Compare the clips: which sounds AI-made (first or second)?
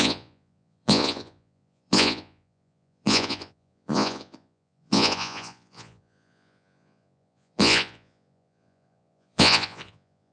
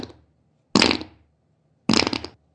first